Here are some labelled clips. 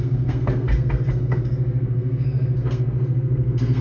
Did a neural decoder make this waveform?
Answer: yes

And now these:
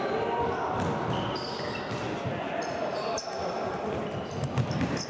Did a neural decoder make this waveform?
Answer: no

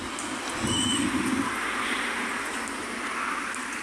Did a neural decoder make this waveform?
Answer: no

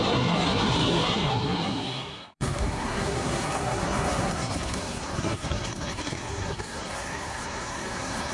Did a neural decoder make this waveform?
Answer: yes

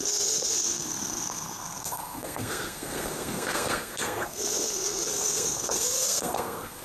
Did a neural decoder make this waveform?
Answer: yes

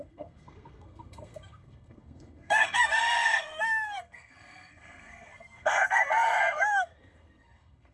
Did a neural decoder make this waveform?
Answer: yes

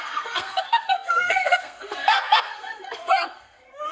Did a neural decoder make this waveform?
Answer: yes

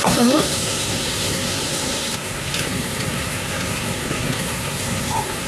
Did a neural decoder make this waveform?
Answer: yes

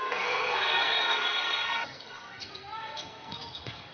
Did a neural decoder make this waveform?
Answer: yes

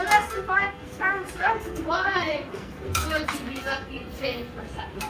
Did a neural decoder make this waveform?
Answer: yes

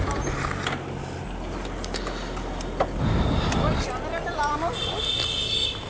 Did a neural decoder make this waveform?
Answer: no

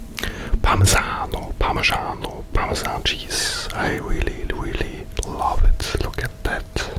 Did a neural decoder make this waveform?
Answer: no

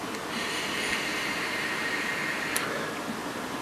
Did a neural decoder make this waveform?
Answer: no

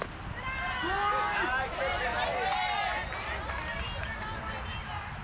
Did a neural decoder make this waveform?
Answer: no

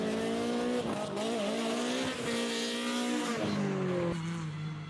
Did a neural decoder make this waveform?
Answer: no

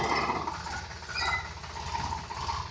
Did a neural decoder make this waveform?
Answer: no